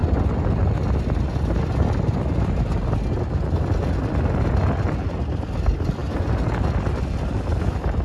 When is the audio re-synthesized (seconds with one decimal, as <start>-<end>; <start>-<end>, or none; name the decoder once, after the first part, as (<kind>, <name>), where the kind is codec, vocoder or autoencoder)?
none